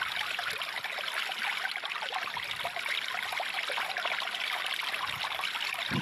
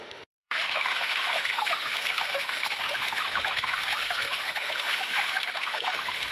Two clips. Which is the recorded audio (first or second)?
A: first